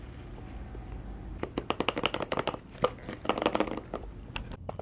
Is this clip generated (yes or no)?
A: no